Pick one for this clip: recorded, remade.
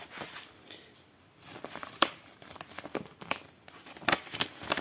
recorded